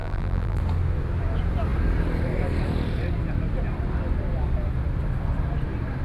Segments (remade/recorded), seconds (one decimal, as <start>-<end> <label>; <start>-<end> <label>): 0.0-0.6 remade; 0.6-6.0 recorded